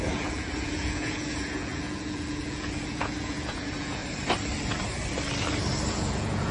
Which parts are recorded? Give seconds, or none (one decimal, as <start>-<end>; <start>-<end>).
4.0-5.9

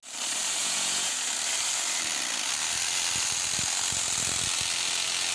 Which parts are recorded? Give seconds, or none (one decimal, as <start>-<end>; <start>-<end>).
0.0-0.6; 1.2-5.3